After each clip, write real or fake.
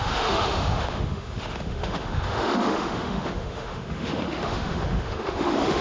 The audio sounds fake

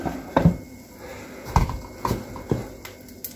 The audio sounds real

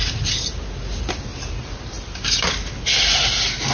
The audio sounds real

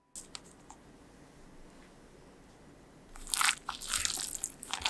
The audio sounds real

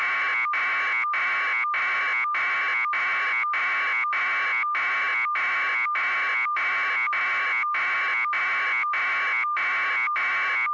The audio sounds real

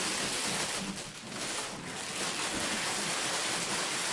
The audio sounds real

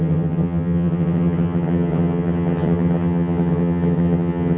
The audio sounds fake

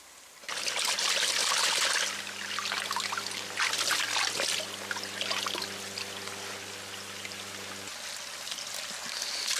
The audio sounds real